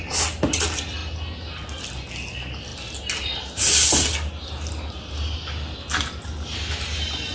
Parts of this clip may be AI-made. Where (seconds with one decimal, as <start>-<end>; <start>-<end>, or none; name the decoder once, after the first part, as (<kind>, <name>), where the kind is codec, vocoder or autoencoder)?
none

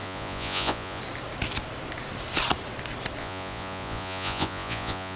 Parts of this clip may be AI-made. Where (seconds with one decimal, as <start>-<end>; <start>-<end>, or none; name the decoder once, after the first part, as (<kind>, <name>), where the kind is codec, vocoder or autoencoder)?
0.0-1.0 (vocoder, Vocos); 3.2-5.2

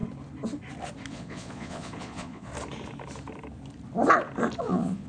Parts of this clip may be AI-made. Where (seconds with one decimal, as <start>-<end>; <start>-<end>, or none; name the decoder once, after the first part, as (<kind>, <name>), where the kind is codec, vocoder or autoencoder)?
1.1-2.5 (vocoder, Vocos); 4.6-5.1

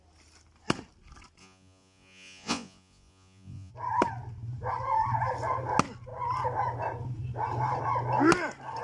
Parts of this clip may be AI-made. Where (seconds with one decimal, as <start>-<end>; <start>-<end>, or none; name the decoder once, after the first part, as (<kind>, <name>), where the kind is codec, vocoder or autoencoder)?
1.4-3.7 (vocoder, Vocos)